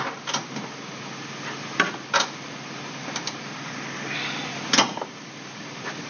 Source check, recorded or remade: recorded